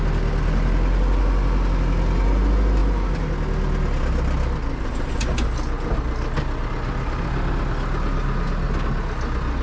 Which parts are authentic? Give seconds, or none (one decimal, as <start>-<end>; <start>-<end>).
0.0-9.6